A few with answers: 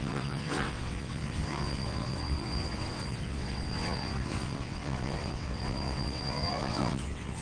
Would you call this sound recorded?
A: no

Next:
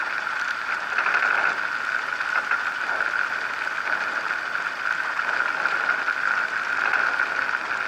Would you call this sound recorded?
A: yes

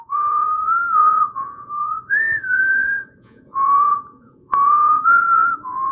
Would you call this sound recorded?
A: no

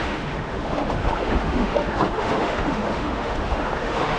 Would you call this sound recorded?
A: no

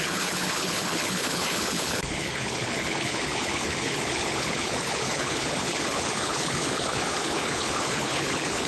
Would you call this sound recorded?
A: no